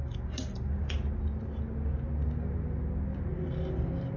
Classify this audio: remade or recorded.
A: recorded